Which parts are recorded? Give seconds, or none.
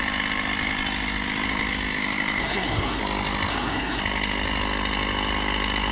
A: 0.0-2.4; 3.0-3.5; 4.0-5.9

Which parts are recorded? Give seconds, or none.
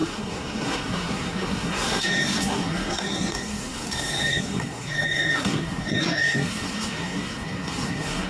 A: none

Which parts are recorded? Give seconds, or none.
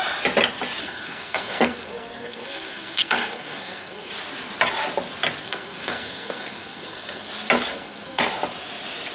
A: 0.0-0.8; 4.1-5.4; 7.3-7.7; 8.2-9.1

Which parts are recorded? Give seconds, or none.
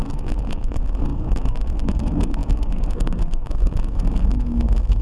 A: none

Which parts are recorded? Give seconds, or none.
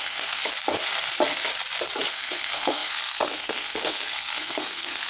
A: 0.4-2.1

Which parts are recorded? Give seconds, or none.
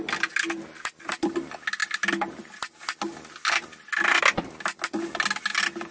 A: 0.0-5.9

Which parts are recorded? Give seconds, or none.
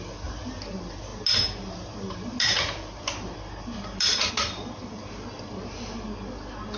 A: 0.0-6.8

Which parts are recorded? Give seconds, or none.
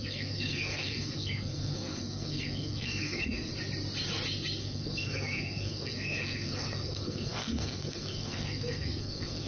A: 3.5-4.6